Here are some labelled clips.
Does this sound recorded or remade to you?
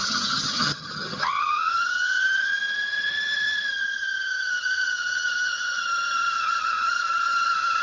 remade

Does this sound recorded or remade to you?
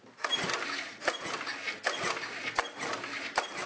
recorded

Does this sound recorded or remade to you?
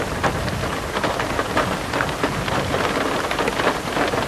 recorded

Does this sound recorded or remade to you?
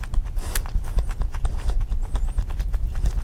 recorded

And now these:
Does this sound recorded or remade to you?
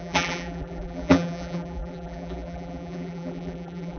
remade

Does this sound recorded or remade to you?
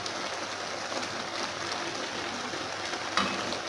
recorded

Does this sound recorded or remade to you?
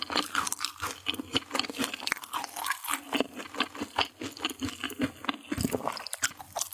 recorded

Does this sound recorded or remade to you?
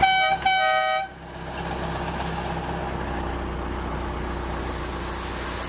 recorded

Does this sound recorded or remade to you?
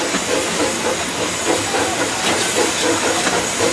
recorded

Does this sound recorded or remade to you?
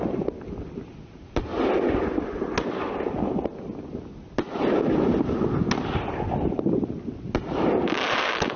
recorded